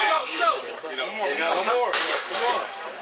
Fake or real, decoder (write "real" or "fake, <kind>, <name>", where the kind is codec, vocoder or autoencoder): fake, codec, DAC